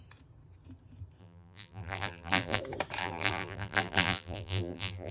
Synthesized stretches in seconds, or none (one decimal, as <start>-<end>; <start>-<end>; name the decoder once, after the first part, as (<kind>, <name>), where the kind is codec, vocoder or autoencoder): 1.2-2.6 (vocoder, BigVGAN v2); 3.0-5.1